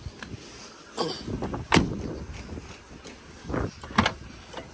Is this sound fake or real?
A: real